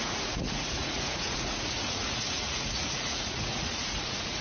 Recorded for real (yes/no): no